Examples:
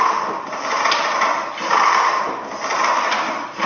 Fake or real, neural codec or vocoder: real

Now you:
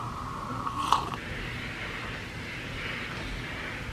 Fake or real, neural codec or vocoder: real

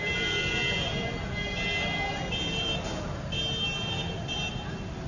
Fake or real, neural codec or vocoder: real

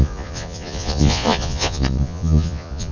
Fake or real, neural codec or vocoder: fake, vocoder, Vocos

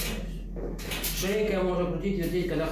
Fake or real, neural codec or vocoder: real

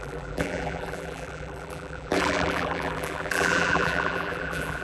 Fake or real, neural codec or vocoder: fake, vocoder, BigVGAN v2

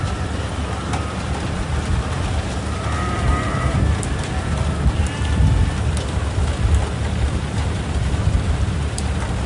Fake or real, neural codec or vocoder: fake, vocoder, BigVGAN v2